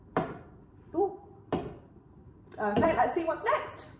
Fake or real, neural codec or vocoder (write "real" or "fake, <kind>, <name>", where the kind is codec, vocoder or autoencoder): fake, vocoder, BigVGAN v2